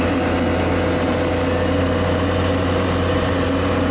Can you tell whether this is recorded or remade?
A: recorded